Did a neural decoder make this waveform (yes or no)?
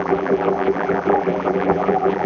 yes